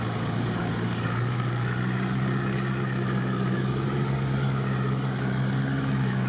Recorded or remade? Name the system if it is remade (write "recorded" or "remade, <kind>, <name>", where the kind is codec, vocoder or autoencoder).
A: remade, codec, DAC